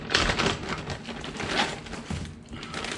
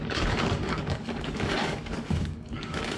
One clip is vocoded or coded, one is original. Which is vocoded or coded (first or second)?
second